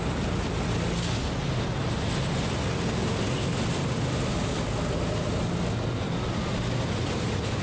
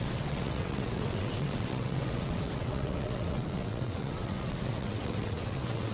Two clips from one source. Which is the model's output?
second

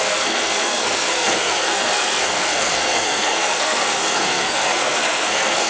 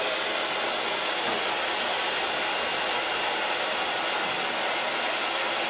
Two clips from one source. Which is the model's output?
first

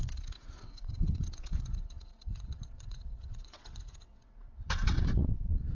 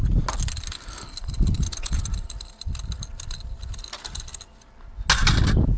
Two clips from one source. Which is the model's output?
first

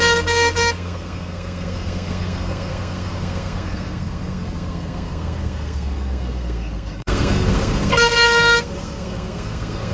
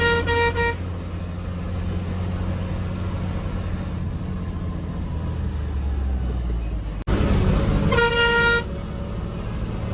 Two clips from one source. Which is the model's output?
first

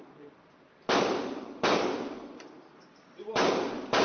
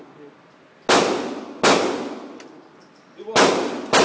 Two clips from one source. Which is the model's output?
first